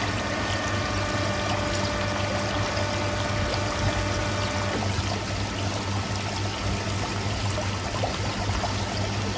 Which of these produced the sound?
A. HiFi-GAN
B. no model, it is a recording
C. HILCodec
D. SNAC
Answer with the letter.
B